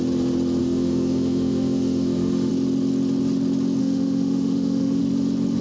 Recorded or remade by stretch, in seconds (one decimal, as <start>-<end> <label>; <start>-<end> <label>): 0.0-0.6 recorded; 0.6-2.5 remade; 2.5-3.8 recorded; 3.8-5.0 remade; 5.0-5.6 recorded